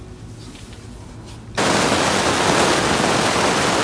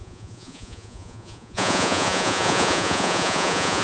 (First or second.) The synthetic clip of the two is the second